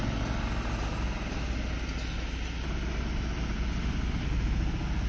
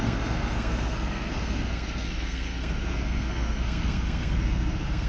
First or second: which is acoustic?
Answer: first